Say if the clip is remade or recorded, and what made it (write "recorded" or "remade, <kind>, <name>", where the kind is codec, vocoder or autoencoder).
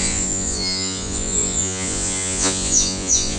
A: remade, vocoder, Vocos